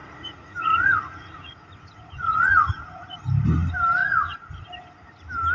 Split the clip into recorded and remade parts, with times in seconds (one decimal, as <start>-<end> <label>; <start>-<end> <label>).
0.0-3.2 remade; 3.2-4.0 recorded; 4.0-4.7 remade; 4.7-5.5 recorded